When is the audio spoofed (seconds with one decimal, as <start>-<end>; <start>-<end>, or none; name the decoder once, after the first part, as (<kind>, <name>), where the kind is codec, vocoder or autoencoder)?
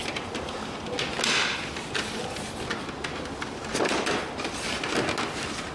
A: 0.0-0.8 (vocoder, BigVGAN v2); 3.7-4.7